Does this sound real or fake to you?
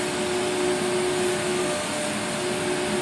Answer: real